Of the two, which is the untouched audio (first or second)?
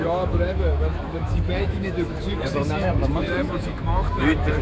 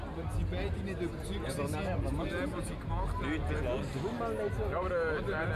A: second